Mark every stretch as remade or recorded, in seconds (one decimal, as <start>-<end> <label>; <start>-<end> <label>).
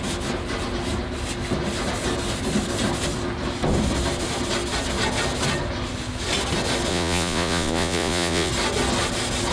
0.0-6.9 recorded; 6.9-8.5 remade; 8.5-9.5 recorded